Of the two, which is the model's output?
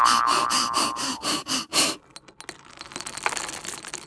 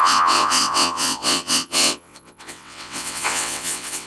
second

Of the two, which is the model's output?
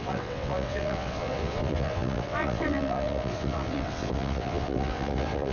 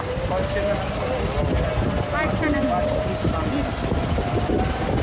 first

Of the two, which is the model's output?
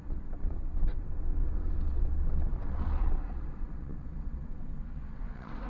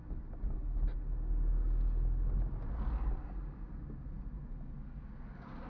first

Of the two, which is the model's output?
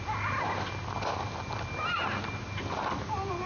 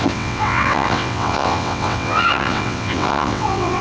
second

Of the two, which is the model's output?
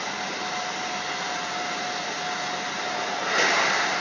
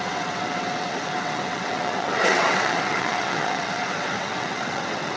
second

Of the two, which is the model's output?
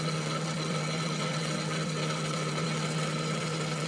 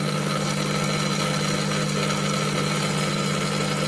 first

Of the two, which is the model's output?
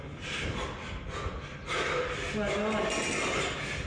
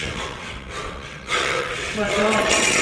second